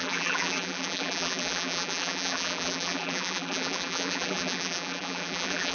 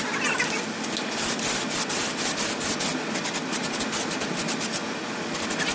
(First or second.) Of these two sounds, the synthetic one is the first